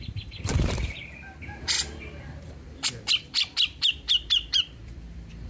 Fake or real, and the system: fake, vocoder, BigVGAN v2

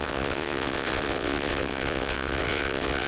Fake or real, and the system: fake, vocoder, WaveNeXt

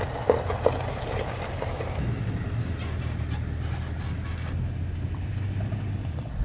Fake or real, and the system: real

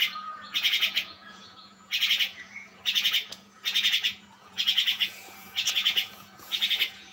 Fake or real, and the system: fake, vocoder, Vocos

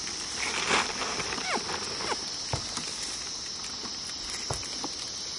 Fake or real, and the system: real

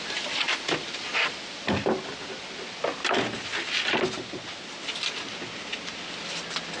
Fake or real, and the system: real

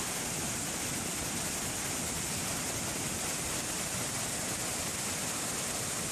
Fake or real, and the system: real